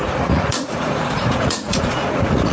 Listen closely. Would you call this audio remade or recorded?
remade